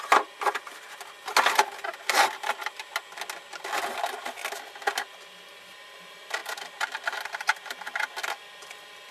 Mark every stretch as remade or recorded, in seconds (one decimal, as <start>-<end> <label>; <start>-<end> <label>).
0.0-6.4 recorded; 6.4-8.7 remade; 8.7-9.1 recorded